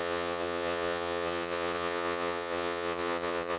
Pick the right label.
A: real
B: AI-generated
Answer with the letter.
B